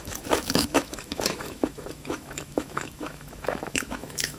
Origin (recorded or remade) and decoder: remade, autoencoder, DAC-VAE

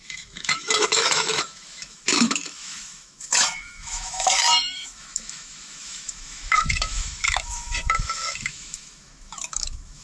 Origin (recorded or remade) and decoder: remade, autoencoder, DAC-VAE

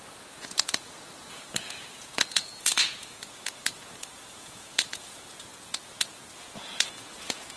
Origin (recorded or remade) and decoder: remade, vocoder, Vocos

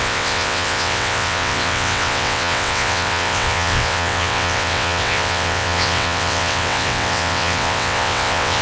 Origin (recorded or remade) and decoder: remade, vocoder, WaveNeXt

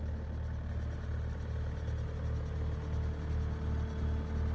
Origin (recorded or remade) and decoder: recorded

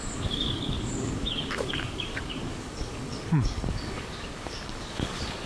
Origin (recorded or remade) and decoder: remade, codec, DAC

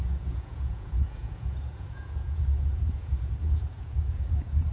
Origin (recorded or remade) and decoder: remade, vocoder, Vocos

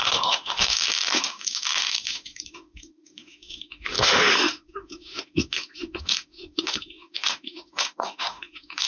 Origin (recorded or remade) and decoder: remade, autoencoder, DAC-VAE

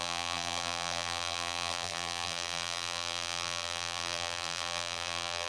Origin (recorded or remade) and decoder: remade, vocoder, BigVGAN v2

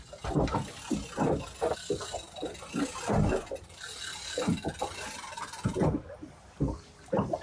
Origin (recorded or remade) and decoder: recorded